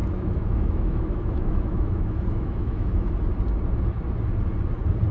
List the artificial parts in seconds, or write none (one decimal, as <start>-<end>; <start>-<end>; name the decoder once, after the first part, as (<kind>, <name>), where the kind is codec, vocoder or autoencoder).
0.0-3.1 (autoencoder, DAC-VAE)